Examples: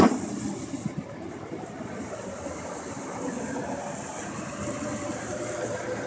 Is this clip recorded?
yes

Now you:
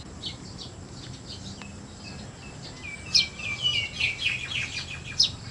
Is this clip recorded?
yes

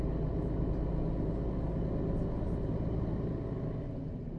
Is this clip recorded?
yes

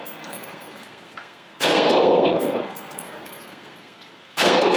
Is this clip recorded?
no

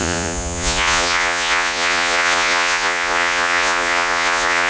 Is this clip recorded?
no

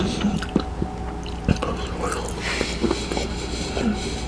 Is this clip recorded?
yes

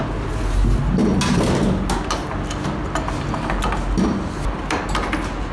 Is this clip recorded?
yes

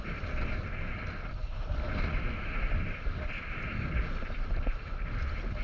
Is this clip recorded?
yes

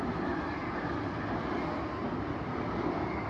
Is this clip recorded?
yes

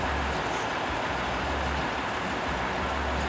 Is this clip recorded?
yes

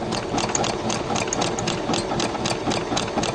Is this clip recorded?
yes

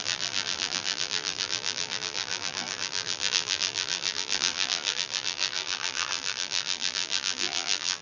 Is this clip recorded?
no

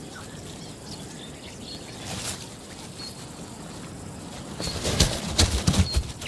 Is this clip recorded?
yes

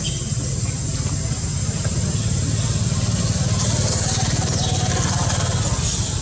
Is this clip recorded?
yes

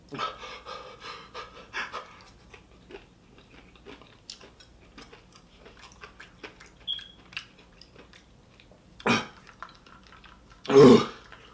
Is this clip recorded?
yes